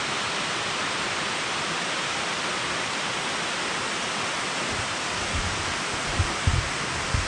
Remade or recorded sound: recorded